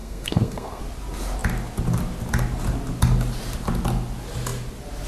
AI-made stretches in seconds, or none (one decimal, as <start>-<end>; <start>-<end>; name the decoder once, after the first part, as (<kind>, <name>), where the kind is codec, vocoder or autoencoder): 0.0-0.8 (codec, SNAC)